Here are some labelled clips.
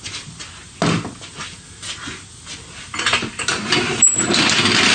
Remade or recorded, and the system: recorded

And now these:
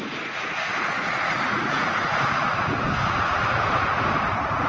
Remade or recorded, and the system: remade, vocoder, Vocos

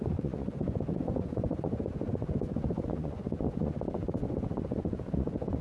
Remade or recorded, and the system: remade, vocoder, Vocos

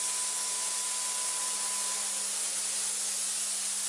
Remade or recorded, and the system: recorded